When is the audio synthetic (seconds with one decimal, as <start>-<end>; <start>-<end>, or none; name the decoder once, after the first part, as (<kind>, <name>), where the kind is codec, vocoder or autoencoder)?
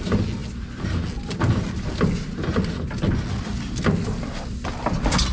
none